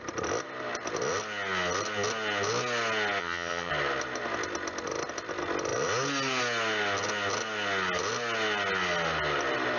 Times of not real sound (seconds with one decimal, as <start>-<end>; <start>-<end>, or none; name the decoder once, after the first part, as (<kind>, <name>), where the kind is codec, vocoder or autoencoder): 3.2-3.7 (vocoder, HiFi-GAN)